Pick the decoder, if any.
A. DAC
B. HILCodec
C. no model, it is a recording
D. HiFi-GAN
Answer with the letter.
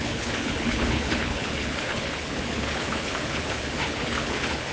B